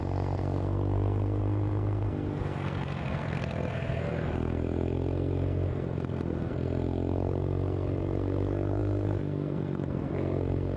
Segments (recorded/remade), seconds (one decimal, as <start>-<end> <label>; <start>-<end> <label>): 0.0-10.8 remade